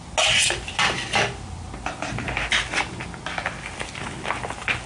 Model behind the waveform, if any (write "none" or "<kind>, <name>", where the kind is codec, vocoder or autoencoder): none